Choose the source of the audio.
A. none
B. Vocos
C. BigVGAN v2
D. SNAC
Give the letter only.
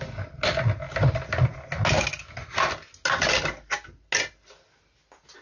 A